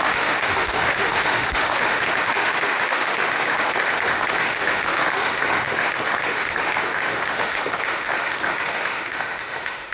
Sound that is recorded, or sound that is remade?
remade